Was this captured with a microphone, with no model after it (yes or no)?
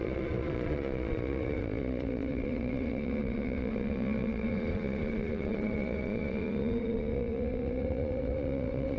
no